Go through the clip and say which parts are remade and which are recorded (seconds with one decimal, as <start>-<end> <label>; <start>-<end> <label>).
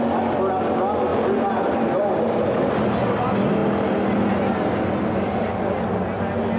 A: 0.0-1.1 recorded; 1.1-2.7 remade; 2.7-6.6 recorded